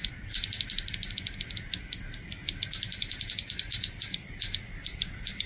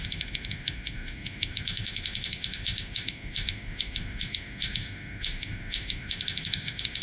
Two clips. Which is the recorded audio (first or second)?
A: first